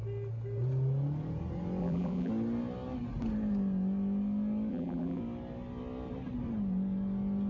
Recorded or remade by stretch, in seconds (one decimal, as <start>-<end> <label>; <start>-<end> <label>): 0.0-1.8 recorded; 1.8-2.3 remade; 2.3-4.7 recorded; 4.7-5.2 remade; 5.2-7.5 recorded